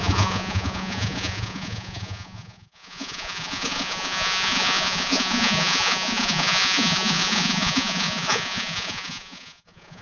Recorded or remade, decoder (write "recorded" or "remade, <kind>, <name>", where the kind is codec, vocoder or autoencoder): remade, vocoder, Vocos